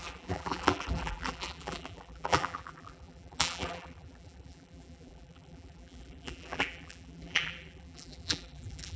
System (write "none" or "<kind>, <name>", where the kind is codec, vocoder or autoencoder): vocoder, BigVGAN v2